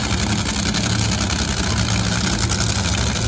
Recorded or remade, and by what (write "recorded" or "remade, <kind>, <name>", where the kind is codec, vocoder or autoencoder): recorded